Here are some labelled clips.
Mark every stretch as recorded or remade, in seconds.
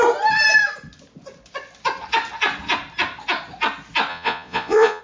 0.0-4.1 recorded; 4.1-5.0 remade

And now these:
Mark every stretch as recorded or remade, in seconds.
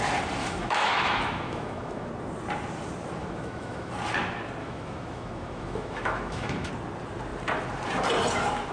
0.0-0.4 recorded; 0.4-2.1 remade; 2.1-3.2 recorded; 3.2-3.9 remade; 3.9-4.6 recorded; 4.6-6.7 remade; 6.7-8.7 recorded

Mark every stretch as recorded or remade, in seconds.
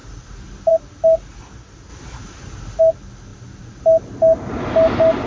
0.0-5.3 recorded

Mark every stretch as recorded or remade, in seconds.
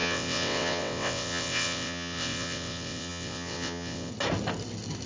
0.0-4.1 remade; 4.1-5.1 recorded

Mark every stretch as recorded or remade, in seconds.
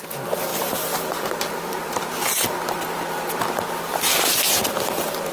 0.0-0.5 recorded; 0.5-2.0 remade; 2.0-5.3 recorded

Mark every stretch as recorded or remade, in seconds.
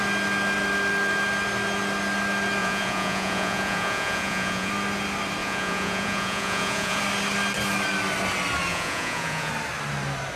0.0-2.6 recorded; 2.6-4.7 remade; 4.7-5.4 recorded; 5.4-7.0 remade; 7.0-8.7 recorded; 8.7-9.5 remade; 9.5-10.4 recorded